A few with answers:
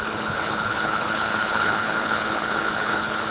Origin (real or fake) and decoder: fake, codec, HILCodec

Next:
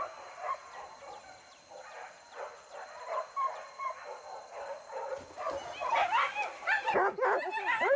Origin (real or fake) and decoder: real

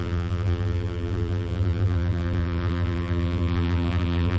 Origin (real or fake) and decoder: fake, vocoder, BigVGAN v2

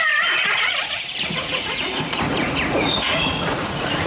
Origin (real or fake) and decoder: fake, vocoder, Vocos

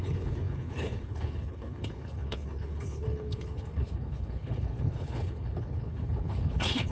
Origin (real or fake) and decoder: fake, codec, HILCodec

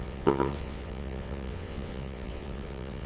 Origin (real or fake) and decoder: fake, vocoder, WaveNeXt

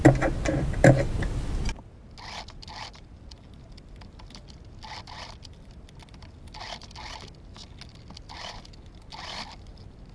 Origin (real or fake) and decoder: real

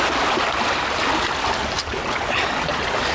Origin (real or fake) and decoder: real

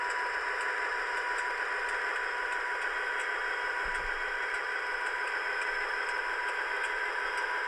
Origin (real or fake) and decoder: fake, vocoder, BigVGAN v2